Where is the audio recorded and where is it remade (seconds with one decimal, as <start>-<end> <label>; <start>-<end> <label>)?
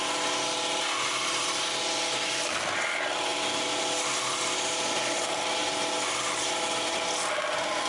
0.0-7.9 recorded